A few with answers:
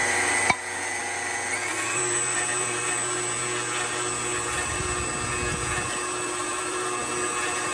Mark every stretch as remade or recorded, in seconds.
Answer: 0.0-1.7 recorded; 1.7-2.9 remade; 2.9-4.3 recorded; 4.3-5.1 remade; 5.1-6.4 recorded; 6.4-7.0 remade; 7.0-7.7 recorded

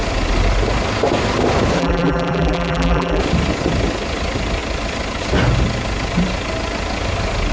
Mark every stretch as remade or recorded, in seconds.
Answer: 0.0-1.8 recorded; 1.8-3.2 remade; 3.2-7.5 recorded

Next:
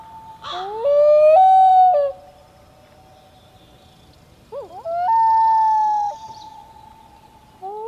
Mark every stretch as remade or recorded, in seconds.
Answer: 0.0-7.9 recorded

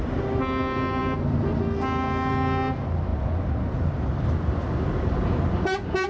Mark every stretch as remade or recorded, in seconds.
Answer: 0.0-6.1 recorded